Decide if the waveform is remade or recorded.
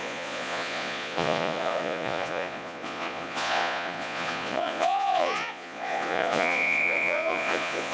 remade